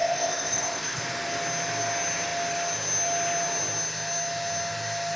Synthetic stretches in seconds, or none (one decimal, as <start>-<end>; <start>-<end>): 0.0-1.0